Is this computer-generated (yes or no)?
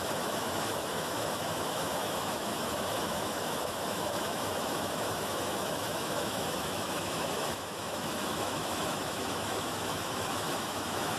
yes